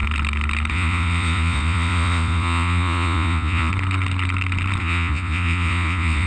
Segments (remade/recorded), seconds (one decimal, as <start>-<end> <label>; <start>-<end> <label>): 0.0-0.7 recorded; 0.7-3.7 remade; 3.7-4.8 recorded; 4.8-6.3 remade